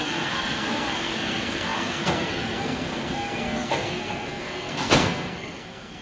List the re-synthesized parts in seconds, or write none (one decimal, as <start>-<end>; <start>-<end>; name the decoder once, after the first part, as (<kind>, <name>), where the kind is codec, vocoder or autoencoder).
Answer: 0.0-6.0 (codec, SNAC)